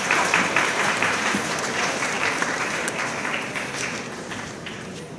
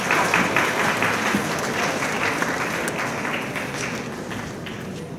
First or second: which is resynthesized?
first